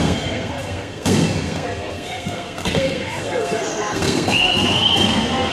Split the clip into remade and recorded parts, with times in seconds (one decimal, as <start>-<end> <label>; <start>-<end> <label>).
0.0-5.5 remade